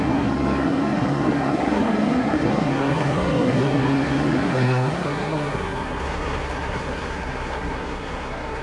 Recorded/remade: remade